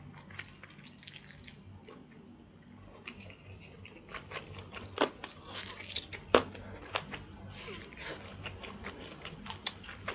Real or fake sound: real